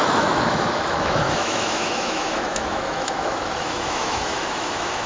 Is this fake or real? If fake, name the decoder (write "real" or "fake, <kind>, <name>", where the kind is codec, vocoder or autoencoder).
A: fake, autoencoder, DAC-VAE